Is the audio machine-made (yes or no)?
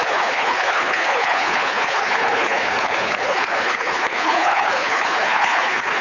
yes